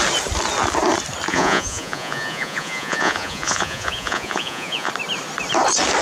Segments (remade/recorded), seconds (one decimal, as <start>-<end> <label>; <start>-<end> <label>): 0.0-1.3 recorded; 1.3-4.9 remade; 4.9-6.0 recorded